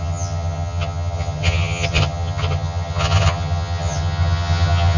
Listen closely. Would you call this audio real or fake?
fake